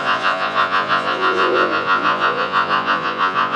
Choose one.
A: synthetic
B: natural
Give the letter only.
A